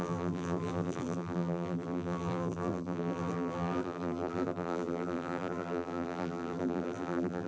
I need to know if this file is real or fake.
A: fake